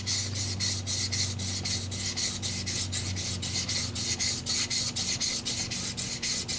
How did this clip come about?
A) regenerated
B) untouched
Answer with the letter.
B